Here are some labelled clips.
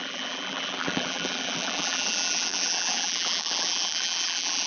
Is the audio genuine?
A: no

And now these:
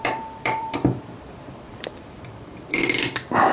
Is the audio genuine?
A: no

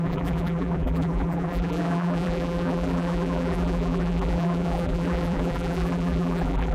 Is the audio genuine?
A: no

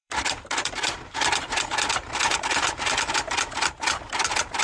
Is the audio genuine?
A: no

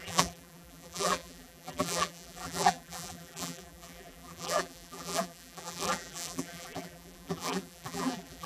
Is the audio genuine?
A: no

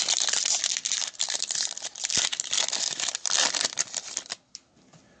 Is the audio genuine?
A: no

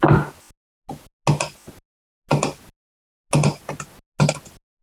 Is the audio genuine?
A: yes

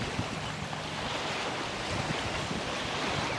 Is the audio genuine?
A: yes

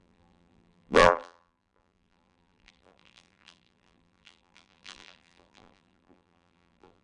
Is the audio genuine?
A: no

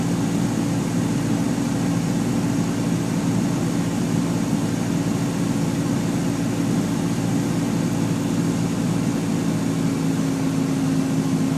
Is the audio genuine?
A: yes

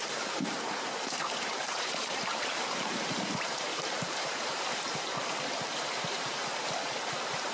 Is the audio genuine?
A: no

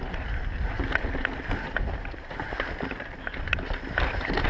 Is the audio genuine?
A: yes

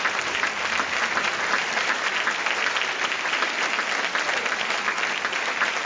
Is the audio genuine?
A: no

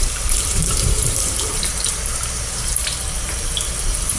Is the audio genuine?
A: no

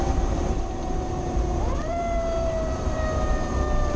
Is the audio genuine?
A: no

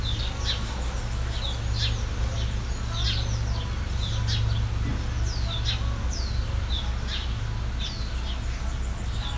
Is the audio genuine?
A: yes